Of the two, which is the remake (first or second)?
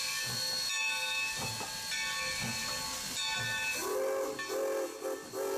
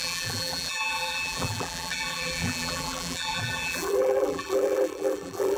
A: second